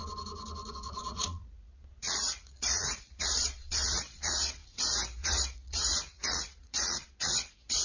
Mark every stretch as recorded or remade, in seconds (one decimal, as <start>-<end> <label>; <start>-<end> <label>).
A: 0.0-0.7 recorded; 0.7-4.6 remade; 4.6-5.2 recorded; 5.2-7.8 remade